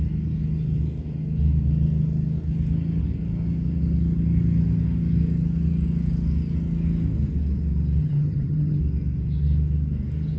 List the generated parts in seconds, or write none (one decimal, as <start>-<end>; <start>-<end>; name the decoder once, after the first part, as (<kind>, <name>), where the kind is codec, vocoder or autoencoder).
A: 8.0-8.8 (vocoder, HiFi-GAN)